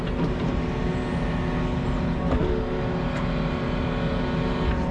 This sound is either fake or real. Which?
real